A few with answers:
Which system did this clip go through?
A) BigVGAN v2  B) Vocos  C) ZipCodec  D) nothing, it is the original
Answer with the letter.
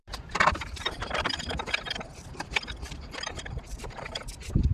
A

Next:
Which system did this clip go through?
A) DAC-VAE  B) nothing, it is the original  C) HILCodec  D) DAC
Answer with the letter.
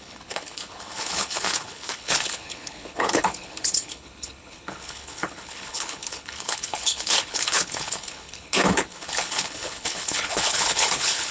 C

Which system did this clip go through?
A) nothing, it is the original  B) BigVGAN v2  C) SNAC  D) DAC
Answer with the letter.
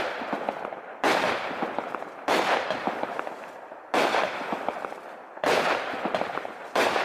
B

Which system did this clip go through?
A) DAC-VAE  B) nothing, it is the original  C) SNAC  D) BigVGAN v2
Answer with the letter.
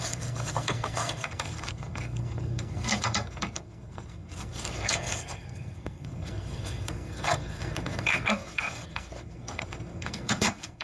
C